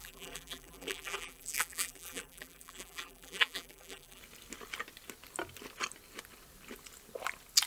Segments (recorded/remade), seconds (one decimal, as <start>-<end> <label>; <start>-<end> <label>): 0.0-4.2 remade; 4.2-7.7 recorded